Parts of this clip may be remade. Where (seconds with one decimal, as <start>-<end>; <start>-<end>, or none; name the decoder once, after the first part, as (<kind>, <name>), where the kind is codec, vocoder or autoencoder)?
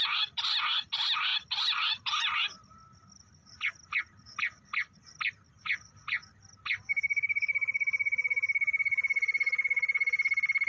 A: none